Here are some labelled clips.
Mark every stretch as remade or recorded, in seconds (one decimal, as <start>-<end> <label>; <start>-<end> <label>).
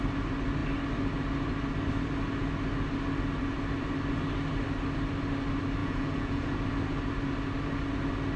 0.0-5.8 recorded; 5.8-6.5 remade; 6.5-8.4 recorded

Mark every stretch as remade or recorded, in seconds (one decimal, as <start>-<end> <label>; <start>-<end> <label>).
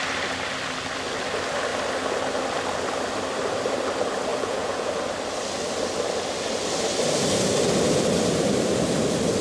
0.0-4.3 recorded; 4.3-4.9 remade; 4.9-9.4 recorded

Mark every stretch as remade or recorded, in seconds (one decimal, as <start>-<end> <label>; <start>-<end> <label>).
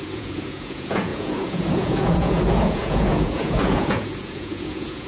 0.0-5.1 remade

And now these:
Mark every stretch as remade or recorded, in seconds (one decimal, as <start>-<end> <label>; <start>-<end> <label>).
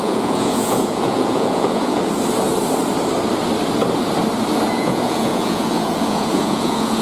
0.0-2.0 remade; 2.0-4.7 recorded; 4.7-7.0 remade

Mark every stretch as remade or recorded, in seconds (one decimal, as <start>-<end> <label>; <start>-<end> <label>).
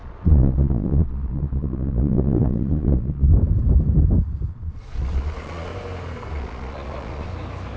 0.0-3.3 remade; 3.3-4.5 recorded; 4.5-5.7 remade; 5.7-6.3 recorded; 6.3-7.3 remade; 7.3-7.8 recorded